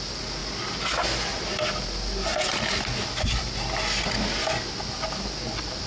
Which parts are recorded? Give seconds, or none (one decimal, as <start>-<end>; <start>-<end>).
0.0-5.9